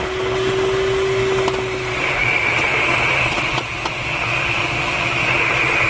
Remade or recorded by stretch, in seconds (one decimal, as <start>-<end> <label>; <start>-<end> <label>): 0.0-5.9 recorded